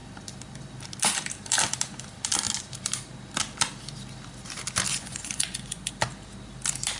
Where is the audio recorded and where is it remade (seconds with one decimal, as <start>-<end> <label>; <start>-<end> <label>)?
0.0-4.9 recorded; 4.9-5.9 remade; 5.9-7.0 recorded

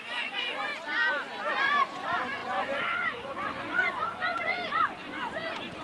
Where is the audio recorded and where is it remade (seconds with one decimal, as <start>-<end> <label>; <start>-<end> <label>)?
0.0-0.7 remade; 0.7-1.5 recorded; 1.5-5.8 remade

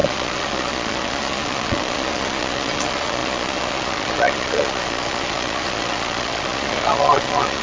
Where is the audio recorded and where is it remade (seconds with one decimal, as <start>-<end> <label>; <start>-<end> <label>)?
0.0-7.6 remade

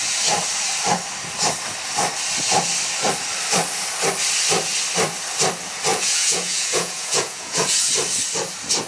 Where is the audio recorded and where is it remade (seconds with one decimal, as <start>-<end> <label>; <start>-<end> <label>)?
0.0-5.9 recorded; 5.9-7.9 remade; 7.9-8.9 recorded

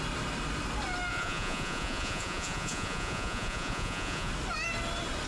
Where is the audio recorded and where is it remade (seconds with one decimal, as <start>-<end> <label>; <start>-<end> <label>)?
0.0-1.1 recorded; 1.1-4.3 remade; 4.3-5.3 recorded